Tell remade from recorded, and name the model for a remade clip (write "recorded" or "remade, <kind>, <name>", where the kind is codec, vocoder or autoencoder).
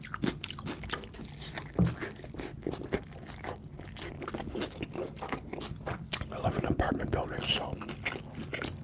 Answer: recorded